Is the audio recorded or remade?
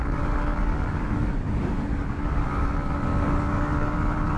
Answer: remade